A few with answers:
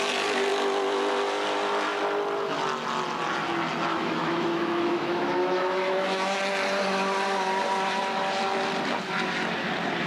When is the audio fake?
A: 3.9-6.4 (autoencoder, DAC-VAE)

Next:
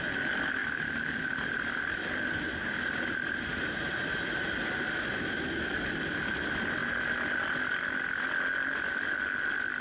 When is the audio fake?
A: none

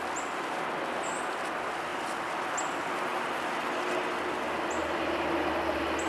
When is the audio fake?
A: none

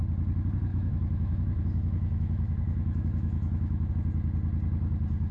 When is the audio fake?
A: 0.7-3.9 (autoencoder, DAC-VAE)

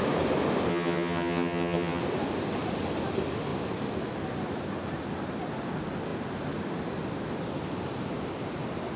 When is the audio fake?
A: 0.7-2.0 (vocoder, HiFi-GAN)

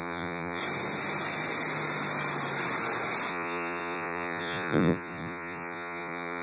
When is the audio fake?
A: 0.0-0.6 (vocoder, Vocos); 3.3-6.4

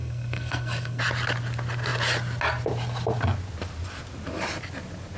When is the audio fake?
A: 0.0-1.0 (codec, SNAC)